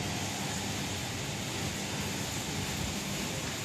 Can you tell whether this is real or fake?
real